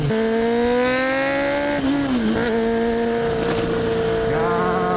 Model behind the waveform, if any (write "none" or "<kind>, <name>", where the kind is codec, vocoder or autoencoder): none